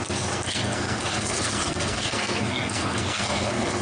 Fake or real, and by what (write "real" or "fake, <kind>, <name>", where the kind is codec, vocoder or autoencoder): fake, codec, SNAC